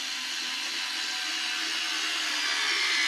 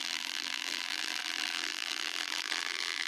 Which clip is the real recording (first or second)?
first